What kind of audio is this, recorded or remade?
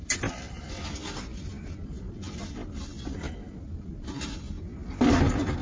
recorded